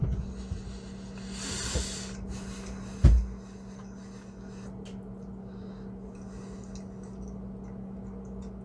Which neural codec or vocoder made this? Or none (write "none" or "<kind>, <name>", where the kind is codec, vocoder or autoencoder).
none